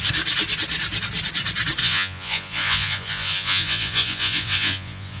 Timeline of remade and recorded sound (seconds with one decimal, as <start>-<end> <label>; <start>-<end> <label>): 0.0-1.8 recorded; 1.8-5.2 remade